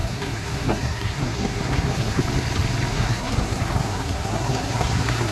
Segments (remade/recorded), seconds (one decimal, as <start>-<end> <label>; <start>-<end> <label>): 0.0-2.2 remade; 2.2-2.9 recorded; 2.9-5.3 remade